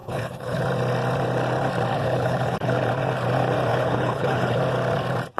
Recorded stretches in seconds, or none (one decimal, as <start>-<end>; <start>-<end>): 0.6-1.9; 2.8-3.7; 4.6-5.4